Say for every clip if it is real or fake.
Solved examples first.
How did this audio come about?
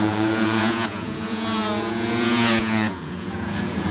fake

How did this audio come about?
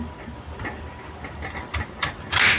real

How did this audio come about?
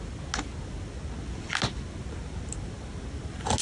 real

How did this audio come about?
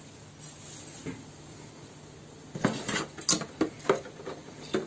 real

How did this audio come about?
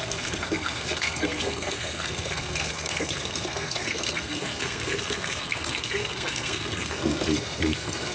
fake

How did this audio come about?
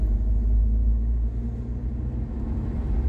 real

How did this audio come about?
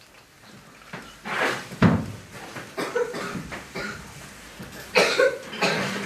fake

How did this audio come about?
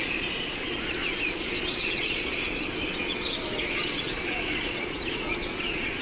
fake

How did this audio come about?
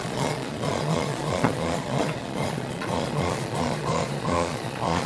fake